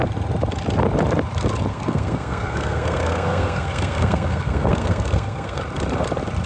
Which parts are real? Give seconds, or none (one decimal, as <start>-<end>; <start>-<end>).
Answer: 0.0-1.7; 5.6-6.5